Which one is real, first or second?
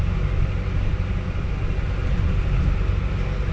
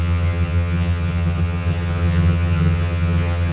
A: first